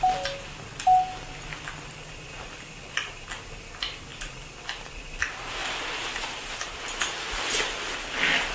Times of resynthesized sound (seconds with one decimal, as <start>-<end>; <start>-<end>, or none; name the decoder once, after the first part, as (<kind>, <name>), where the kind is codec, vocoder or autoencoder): 5.6-6.8 (vocoder, BigVGAN v2)